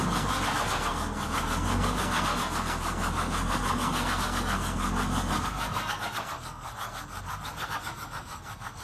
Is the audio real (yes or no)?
no